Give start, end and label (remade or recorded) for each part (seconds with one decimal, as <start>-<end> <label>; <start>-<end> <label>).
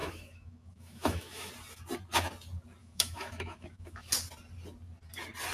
0.0-1.5 remade; 1.5-2.8 recorded; 2.8-4.1 remade; 4.1-5.5 recorded